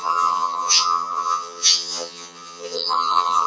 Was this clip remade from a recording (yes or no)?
yes